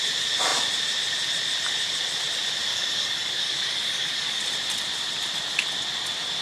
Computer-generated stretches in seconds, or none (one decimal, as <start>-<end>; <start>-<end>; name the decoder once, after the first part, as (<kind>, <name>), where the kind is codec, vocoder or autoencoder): 2.7-4.4 (codec, DAC)